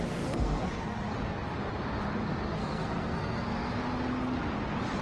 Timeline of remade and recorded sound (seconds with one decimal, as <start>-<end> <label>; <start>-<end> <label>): 0.0-0.7 remade; 0.7-2.6 recorded; 2.6-3.7 remade; 3.7-5.0 recorded